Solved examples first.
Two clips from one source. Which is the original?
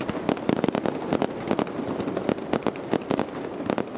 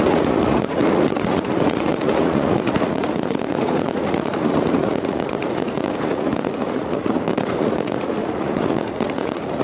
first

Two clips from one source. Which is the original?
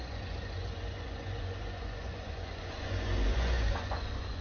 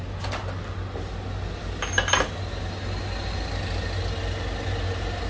second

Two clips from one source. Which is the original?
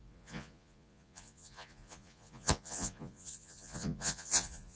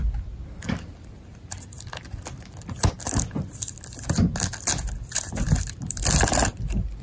second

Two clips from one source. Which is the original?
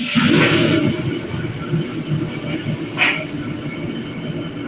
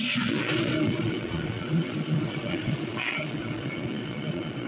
first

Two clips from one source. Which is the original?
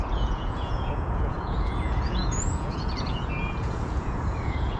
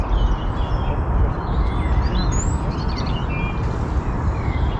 second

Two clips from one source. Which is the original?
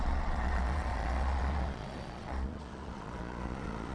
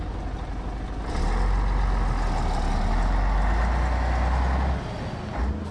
second